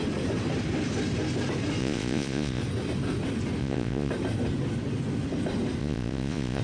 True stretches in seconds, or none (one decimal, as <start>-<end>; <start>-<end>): 0.0-1.8; 2.6-3.6; 4.1-5.8